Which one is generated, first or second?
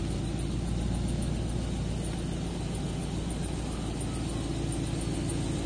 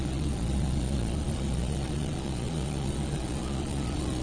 second